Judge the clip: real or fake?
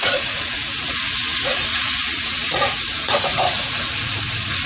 fake